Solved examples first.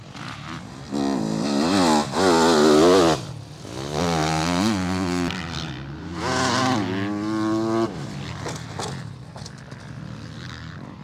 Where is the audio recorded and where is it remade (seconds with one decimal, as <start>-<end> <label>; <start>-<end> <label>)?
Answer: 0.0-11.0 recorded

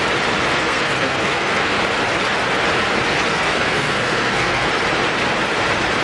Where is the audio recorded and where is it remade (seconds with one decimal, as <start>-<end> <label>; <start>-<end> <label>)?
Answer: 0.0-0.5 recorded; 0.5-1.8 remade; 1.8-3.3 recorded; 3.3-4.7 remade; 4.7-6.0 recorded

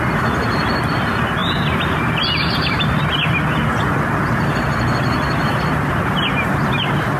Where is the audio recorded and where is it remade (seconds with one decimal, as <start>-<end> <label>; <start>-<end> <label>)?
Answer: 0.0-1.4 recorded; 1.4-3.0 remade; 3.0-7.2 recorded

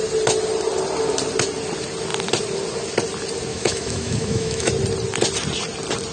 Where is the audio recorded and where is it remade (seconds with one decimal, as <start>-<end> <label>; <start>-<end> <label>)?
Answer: 0.0-3.5 recorded; 3.5-4.7 remade; 4.7-6.1 recorded

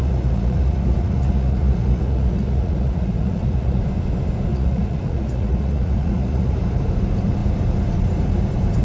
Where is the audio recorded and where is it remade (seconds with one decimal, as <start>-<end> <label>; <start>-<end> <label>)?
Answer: 0.0-3.8 remade; 3.8-4.5 recorded; 4.5-6.5 remade; 6.5-8.8 recorded

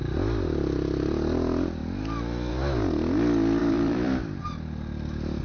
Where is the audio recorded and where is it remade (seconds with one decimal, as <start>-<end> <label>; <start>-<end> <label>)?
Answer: 0.0-3.6 recorded; 3.6-4.4 remade; 4.4-5.4 recorded

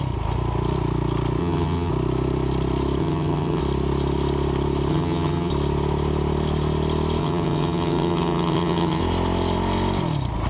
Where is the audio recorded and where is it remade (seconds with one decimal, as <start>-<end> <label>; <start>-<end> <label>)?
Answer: 0.0-1.4 recorded; 1.4-1.9 remade; 1.9-3.0 recorded; 3.0-3.6 remade; 3.6-4.9 recorded; 4.9-5.5 remade; 5.5-7.2 recorded; 7.2-9.0 remade; 9.0-10.5 recorded

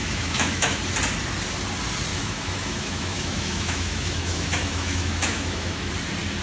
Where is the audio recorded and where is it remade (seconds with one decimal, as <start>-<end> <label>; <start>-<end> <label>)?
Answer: 0.0-0.8 remade; 0.8-2.1 recorded; 2.1-5.9 remade; 5.9-6.4 recorded